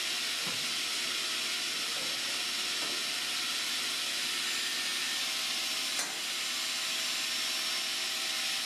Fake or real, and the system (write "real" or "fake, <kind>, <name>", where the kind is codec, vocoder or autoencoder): real